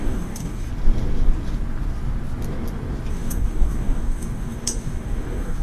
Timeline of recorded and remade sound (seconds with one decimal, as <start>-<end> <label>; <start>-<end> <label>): 0.0-0.7 remade; 0.7-3.1 recorded; 3.1-5.6 remade